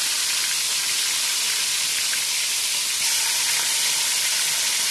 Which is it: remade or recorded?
recorded